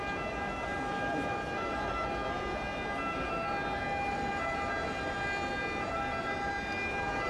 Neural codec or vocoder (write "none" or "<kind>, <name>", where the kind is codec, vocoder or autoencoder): none